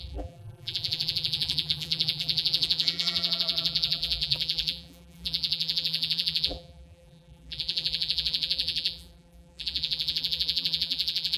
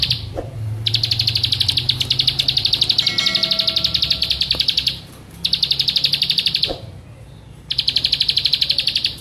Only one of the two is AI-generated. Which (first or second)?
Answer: first